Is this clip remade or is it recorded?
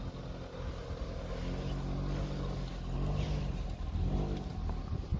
recorded